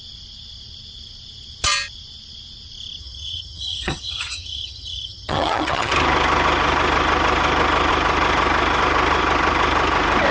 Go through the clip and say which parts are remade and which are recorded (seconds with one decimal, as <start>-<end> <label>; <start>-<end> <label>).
0.0-3.0 recorded; 3.0-5.9 remade; 5.9-10.3 recorded